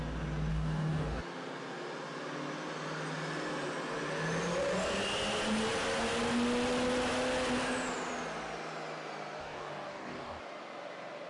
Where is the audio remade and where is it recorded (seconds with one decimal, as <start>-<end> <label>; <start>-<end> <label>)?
0.0-0.5 recorded; 0.5-1.2 remade; 1.2-9.4 recorded; 9.4-10.4 remade; 10.4-11.3 recorded